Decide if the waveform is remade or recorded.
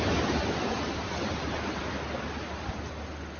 recorded